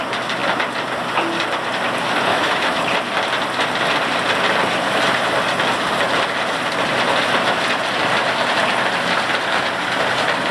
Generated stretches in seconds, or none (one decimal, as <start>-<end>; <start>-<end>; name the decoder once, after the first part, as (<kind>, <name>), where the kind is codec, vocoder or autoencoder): 2.3-2.8 (autoencoder, DAC-VAE)